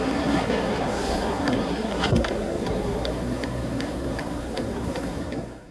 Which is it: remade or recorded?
remade